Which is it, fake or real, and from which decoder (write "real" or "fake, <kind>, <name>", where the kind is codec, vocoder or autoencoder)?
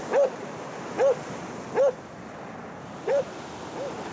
real